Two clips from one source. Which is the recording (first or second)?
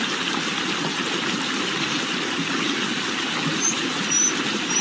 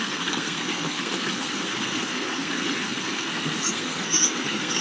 first